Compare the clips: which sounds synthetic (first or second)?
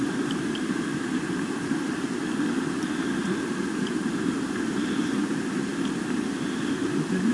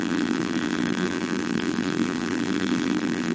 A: second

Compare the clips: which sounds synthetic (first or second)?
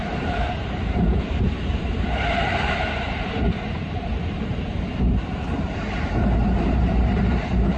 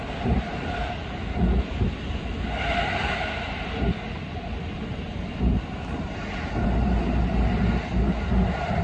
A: first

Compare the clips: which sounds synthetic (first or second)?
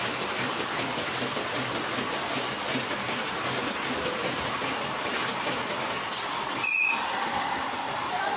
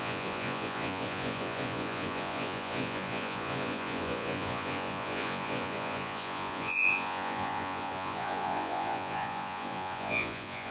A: second